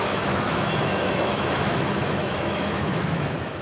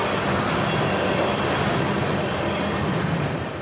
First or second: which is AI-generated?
first